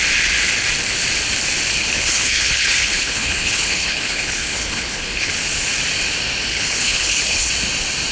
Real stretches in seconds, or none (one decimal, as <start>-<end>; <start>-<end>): 0.0-1.8; 5.3-6.5; 7.5-8.1